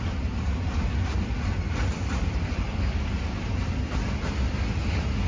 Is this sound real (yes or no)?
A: yes